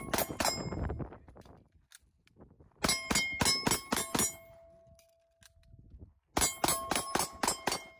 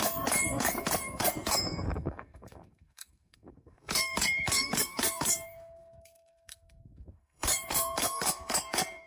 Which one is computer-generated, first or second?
second